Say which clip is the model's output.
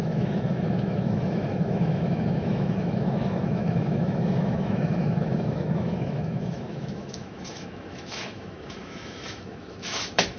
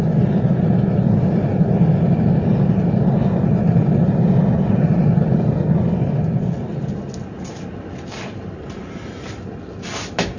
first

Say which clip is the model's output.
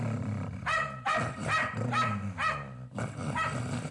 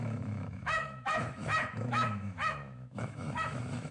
second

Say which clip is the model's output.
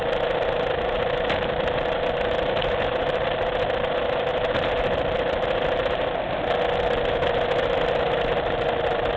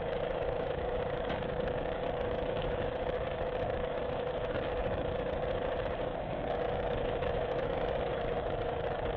second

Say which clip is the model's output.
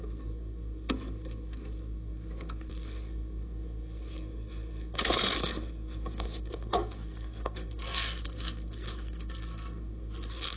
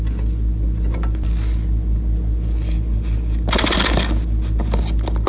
first